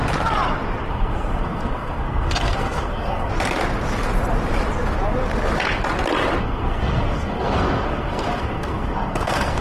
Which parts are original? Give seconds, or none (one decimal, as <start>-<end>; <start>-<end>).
0.0-0.9; 3.3-6.4